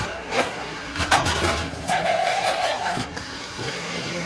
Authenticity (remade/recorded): remade